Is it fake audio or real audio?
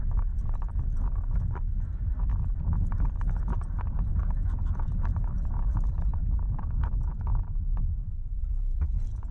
real